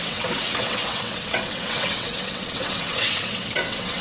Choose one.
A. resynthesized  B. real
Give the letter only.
A